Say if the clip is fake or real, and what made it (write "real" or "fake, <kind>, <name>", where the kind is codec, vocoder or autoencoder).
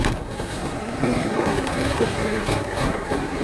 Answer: fake, codec, SNAC